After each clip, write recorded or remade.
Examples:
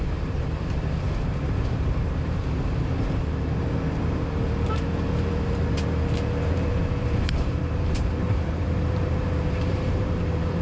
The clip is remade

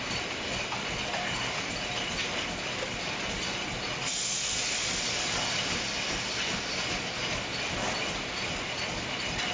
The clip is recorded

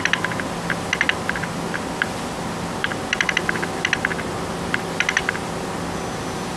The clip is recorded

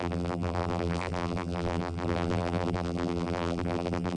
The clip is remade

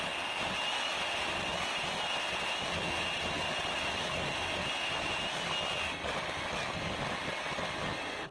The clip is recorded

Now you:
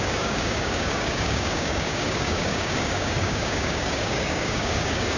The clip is remade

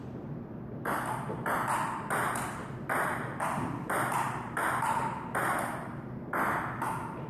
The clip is remade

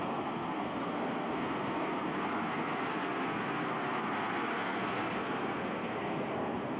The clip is remade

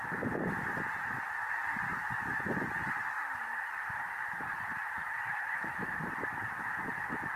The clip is recorded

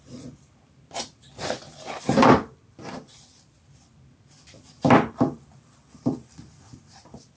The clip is remade